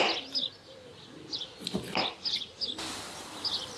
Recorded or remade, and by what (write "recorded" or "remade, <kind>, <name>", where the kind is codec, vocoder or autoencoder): recorded